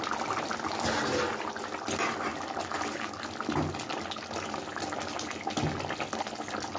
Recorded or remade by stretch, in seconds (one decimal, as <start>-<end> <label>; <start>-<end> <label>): 0.0-6.8 recorded